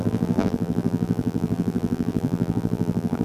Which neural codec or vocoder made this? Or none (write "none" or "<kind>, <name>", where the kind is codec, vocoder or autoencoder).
vocoder, BigVGAN v2